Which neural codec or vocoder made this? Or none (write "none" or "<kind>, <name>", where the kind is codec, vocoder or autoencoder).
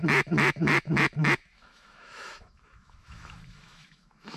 autoencoder, DAC-VAE